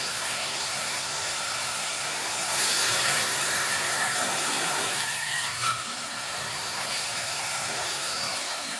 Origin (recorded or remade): remade